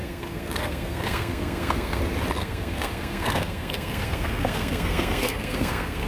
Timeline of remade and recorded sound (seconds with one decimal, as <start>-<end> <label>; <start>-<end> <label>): 0.0-2.0 remade; 2.0-2.4 recorded; 2.4-6.1 remade